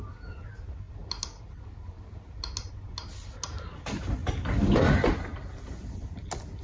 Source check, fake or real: real